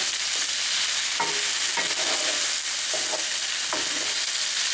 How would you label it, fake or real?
real